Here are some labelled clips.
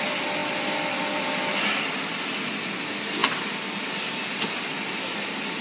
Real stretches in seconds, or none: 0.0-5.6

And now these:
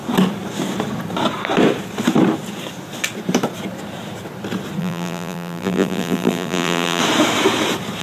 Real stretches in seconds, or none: 0.0-4.8; 7.0-8.0

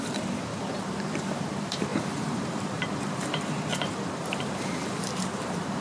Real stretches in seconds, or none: none